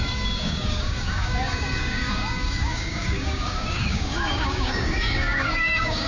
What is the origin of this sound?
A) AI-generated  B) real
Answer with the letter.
A